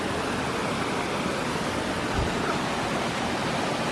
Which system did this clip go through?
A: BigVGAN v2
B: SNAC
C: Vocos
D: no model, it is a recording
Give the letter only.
D